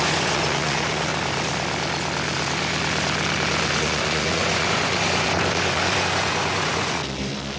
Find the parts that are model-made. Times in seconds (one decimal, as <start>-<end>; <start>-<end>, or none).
0.0-1.1; 3.8-7.0